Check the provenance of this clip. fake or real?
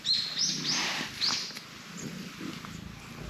real